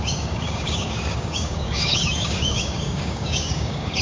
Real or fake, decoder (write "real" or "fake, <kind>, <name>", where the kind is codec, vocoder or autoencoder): fake, codec, DAC